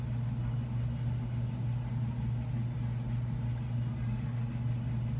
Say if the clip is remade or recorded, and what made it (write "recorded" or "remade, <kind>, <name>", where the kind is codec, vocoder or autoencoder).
recorded